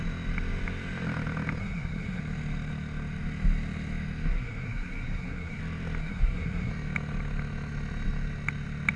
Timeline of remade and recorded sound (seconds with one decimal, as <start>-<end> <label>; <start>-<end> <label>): 0.0-1.6 recorded; 1.6-2.2 remade; 2.2-4.3 recorded; 4.3-5.6 remade; 5.6-6.0 recorded; 6.0-6.7 remade; 6.7-9.0 recorded